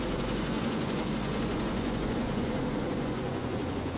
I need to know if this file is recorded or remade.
remade